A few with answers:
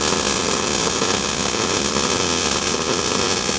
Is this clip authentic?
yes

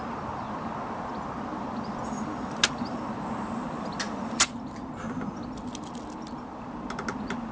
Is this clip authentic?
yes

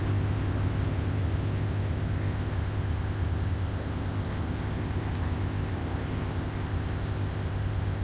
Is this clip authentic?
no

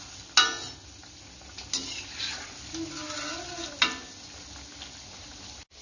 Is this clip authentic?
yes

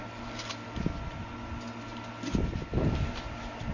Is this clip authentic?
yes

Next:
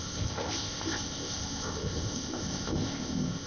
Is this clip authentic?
no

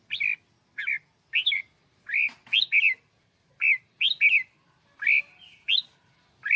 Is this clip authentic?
yes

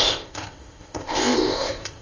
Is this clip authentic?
no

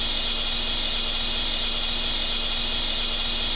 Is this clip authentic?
yes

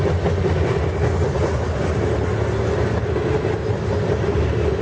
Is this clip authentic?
yes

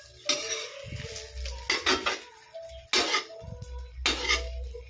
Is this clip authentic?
yes